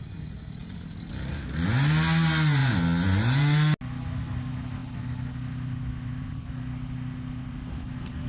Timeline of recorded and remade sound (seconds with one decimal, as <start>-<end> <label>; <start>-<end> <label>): 0.0-8.3 recorded